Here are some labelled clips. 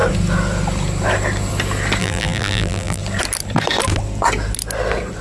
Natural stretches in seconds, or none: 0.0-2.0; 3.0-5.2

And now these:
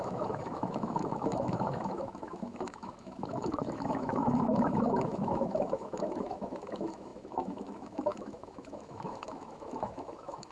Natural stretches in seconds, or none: none

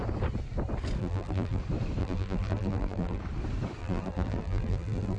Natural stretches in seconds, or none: 0.0-1.0; 1.6-2.0; 3.2-3.8

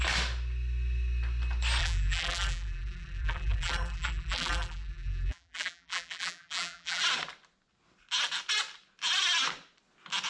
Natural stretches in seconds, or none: 0.0-1.8; 7.0-10.3

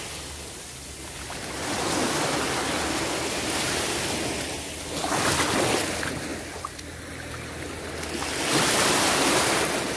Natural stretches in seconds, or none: 0.0-10.0

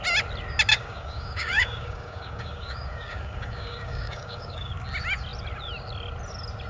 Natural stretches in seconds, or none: 0.0-0.7; 4.7-6.7